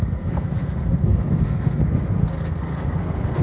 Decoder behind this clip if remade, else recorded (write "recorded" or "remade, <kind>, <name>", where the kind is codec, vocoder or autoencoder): remade, codec, SNAC